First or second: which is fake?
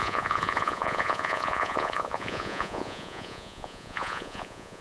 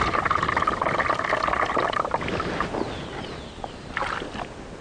first